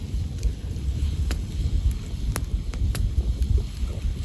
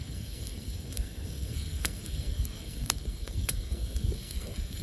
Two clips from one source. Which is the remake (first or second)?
second